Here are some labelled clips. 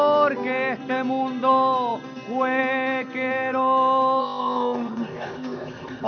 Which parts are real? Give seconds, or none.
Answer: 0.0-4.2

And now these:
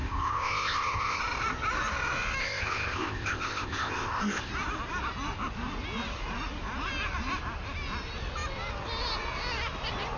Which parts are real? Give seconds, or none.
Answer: 1.2-2.4; 4.5-10.2

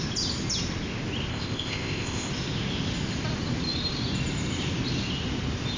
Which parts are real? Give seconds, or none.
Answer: 0.0-1.3; 2.3-5.8

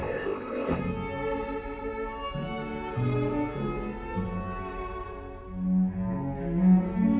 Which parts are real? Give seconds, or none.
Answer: 0.8-7.2

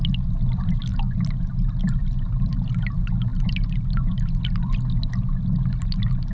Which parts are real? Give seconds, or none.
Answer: 0.0-6.3

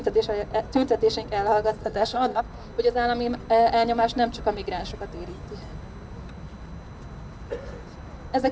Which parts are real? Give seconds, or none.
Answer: 0.0-1.8; 2.4-8.5

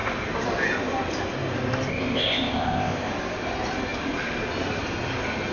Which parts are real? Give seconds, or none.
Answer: 0.0-1.9; 3.1-5.5